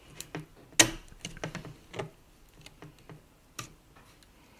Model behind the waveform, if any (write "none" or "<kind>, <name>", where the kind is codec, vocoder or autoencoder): none